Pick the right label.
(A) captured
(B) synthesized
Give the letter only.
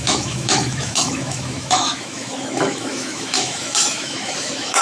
B